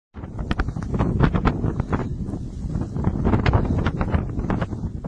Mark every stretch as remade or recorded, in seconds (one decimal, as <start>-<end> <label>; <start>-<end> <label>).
0.0-5.1 recorded